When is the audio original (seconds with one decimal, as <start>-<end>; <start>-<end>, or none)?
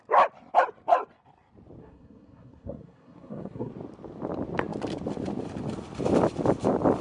0.0-1.8; 3.7-7.0